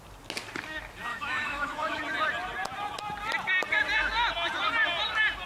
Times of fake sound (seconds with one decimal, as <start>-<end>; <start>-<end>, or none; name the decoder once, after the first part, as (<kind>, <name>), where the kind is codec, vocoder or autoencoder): 1.1-2.0 (autoencoder, DAC-VAE)